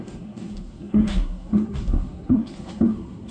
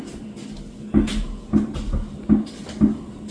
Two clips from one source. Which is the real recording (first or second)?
second